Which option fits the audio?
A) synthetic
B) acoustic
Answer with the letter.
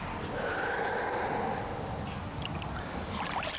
B